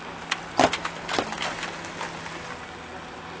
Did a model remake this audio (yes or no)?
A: no